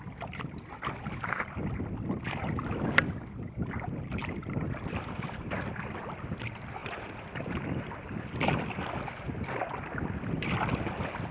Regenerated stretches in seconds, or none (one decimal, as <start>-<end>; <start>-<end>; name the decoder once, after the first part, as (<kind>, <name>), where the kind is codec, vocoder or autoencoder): 4.4-5.8 (vocoder, BigVGAN v2); 6.8-8.3